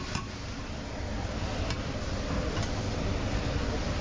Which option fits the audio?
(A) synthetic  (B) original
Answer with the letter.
B